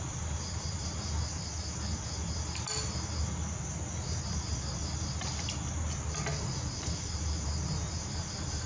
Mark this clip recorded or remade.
recorded